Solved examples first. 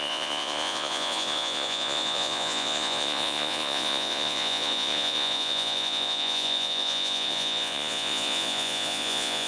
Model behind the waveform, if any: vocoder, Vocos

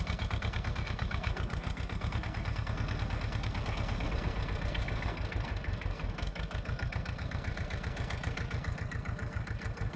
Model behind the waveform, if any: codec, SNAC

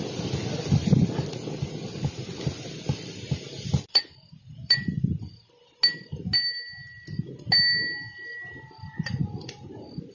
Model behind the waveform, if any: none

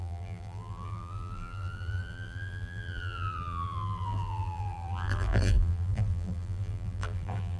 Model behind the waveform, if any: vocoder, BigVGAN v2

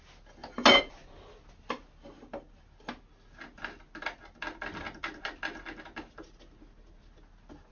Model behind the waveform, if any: none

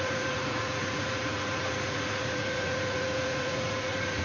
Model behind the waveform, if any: vocoder, Vocos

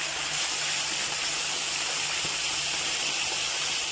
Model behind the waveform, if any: none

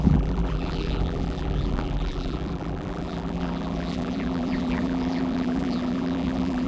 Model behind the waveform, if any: vocoder, BigVGAN v2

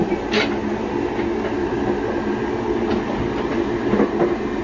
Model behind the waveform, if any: none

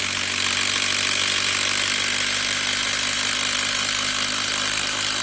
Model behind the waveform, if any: none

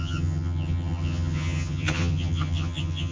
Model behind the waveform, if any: vocoder, HiFi-GAN